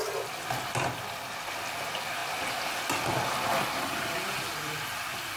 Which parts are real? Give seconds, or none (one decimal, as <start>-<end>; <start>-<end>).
0.0-5.4